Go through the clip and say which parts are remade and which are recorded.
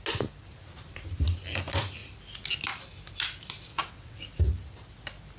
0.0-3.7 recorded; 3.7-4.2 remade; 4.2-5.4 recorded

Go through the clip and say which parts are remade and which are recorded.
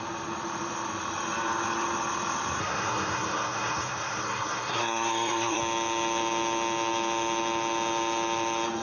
0.0-2.6 recorded; 2.6-5.6 remade; 5.6-8.8 recorded